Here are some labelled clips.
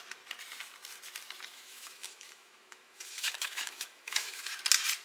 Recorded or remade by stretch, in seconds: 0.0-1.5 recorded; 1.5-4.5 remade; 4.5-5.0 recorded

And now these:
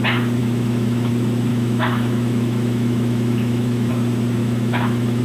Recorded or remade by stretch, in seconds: 0.0-0.4 recorded; 0.4-1.1 remade; 1.1-1.5 recorded; 1.5-3.9 remade; 3.9-4.4 recorded; 4.4-5.2 remade

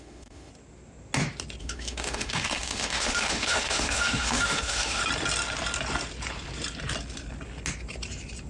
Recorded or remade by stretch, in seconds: 0.0-0.5 remade; 0.5-1.6 recorded; 1.6-5.0 remade; 5.0-8.5 recorded

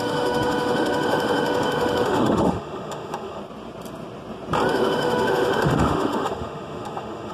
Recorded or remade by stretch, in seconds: 0.0-3.4 remade; 3.4-4.7 recorded; 4.7-7.3 remade